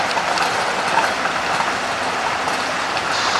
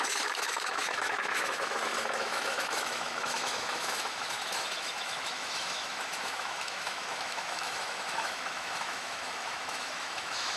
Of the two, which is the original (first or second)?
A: first